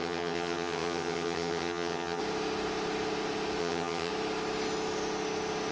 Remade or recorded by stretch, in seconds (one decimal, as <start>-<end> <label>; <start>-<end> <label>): 0.0-2.2 remade; 2.2-3.6 recorded; 3.6-4.1 remade; 4.1-5.7 recorded